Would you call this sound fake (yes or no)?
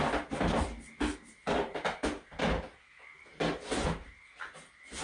no